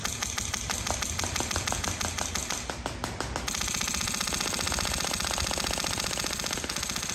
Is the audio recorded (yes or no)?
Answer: yes